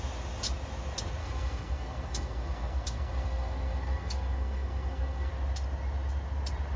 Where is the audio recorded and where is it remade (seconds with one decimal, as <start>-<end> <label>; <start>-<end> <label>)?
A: 0.0-1.2 recorded; 1.2-5.3 remade; 5.3-6.8 recorded